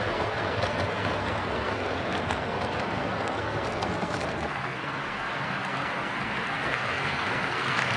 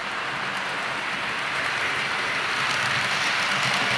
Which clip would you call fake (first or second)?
first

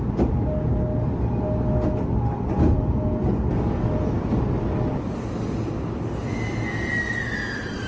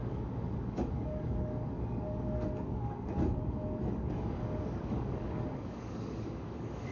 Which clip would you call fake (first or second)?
second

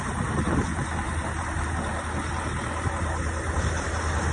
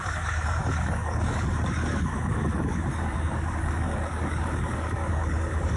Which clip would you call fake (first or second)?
second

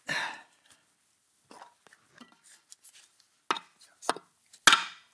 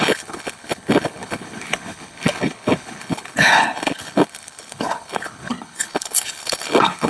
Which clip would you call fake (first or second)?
second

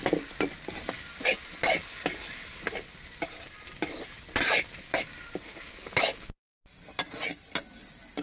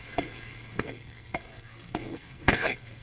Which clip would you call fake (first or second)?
second